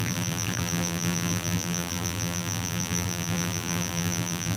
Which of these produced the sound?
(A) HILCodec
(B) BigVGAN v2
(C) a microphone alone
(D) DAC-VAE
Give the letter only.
B